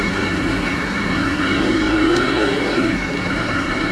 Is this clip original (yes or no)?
no